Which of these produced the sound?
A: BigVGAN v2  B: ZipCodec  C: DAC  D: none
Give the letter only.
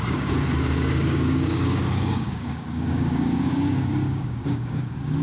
C